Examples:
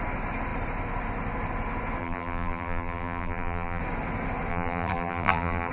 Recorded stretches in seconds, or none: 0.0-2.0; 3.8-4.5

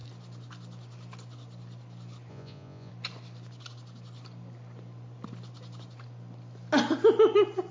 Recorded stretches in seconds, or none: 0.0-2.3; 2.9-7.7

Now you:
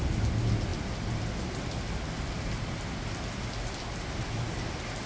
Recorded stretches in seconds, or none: 0.0-5.1

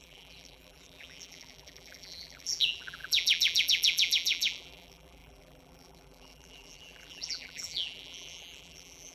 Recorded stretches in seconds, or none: none

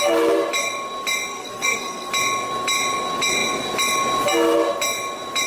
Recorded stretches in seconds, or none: 0.0-1.3; 2.1-5.5